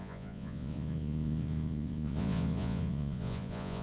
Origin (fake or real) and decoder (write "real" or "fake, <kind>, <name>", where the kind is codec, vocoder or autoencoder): fake, vocoder, Vocos